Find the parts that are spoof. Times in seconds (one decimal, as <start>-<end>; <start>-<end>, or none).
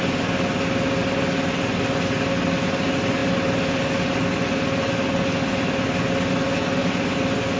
none